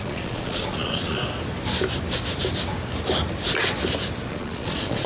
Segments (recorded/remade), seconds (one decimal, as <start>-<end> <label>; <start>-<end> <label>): 0.0-1.2 remade; 1.2-4.3 recorded; 4.3-5.1 remade